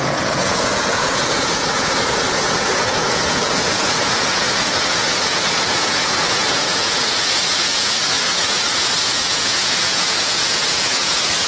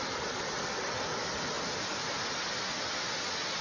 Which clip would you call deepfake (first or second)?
first